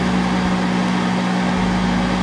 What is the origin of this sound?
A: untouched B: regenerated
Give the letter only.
A